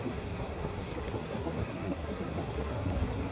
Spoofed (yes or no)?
yes